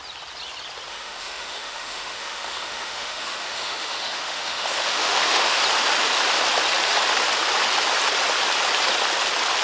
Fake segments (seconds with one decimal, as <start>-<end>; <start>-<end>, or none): 0.9-5.6